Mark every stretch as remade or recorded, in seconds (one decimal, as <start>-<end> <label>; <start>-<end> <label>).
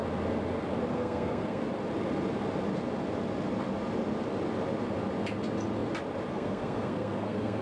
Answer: 0.0-0.9 recorded; 0.9-1.7 remade; 1.7-6.3 recorded; 6.3-7.6 remade